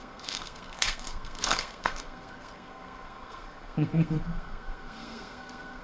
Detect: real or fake fake